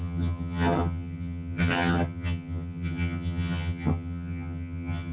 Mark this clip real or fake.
fake